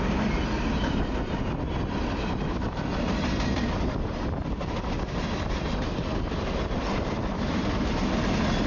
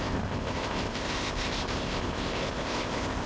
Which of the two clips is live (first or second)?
first